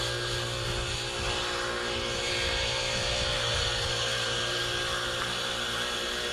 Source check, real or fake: real